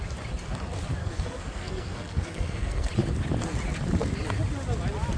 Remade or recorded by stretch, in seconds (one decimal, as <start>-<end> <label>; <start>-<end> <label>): 0.0-1.0 recorded; 1.0-2.9 remade; 2.9-5.2 recorded